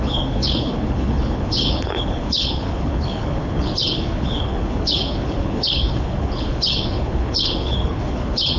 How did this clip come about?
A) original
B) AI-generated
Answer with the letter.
B